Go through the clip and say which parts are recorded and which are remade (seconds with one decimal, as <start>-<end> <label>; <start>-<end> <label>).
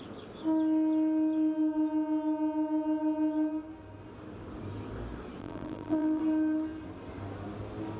0.0-5.4 recorded; 5.4-6.2 remade; 6.2-8.0 recorded